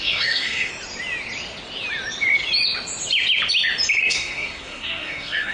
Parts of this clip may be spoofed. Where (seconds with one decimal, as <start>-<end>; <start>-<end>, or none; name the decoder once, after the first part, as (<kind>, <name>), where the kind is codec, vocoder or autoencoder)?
0.0-0.7 (codec, SNAC); 4.0-5.5